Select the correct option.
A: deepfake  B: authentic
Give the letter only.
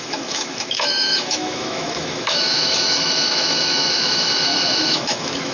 A